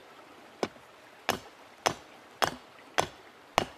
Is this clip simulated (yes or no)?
no